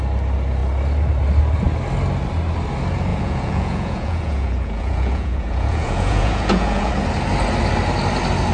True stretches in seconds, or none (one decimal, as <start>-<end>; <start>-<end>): 0.0-3.1; 6.9-8.5